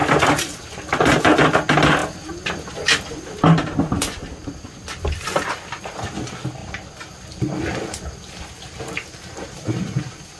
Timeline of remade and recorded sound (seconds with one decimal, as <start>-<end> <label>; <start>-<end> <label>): 0.0-6.6 recorded; 6.6-7.1 remade; 7.1-10.4 recorded